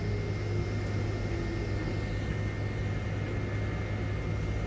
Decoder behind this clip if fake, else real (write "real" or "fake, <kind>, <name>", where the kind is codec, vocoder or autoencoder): real